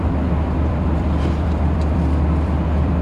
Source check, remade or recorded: remade